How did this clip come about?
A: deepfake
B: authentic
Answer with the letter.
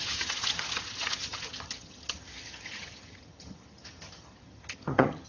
A